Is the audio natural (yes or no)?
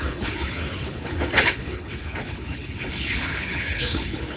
no